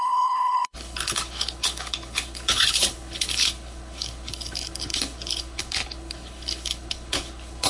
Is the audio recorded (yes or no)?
no